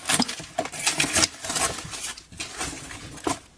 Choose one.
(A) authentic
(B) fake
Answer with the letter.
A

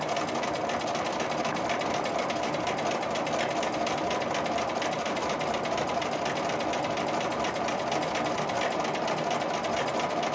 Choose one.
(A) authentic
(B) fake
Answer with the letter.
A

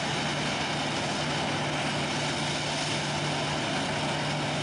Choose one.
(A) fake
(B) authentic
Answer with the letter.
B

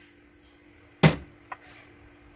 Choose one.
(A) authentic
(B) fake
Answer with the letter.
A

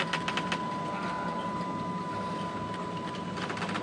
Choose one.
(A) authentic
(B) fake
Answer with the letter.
A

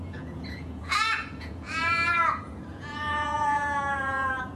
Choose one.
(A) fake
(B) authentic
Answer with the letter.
A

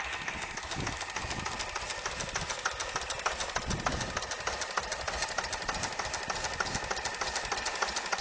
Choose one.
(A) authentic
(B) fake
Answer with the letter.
A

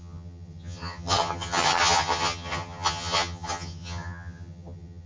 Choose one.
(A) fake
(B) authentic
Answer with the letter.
A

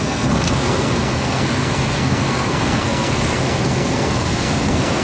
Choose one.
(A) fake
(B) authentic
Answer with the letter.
A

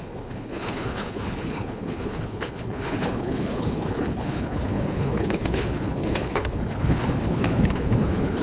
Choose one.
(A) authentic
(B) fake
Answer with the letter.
B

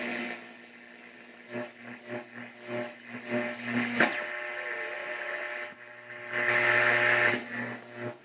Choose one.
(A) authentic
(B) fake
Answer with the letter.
A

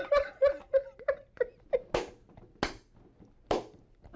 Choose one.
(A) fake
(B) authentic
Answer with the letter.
B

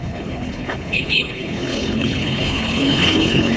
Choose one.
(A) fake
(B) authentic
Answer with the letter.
A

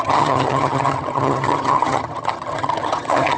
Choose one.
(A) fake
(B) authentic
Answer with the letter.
A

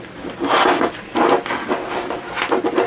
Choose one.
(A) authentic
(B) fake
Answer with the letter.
A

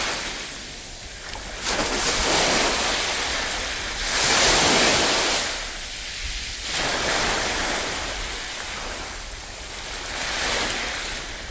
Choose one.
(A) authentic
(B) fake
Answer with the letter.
A